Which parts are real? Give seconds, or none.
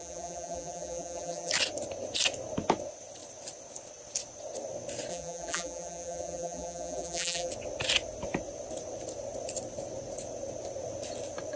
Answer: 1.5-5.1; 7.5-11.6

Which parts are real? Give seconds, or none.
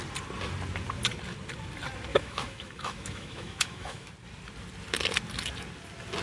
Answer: 0.0-2.1; 4.1-6.2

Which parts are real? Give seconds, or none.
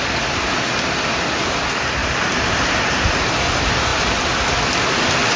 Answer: 0.0-5.4